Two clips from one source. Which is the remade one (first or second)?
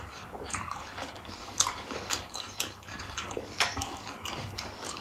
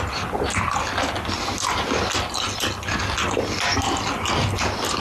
first